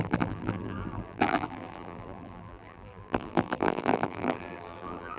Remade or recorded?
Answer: remade